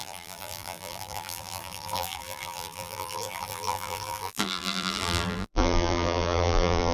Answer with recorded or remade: remade